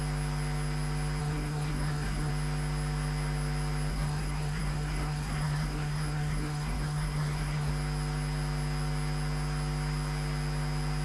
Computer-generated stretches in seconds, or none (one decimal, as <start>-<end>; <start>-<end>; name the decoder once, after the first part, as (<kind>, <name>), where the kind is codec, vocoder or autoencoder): 1.2-2.3 (codec, SNAC); 3.9-7.7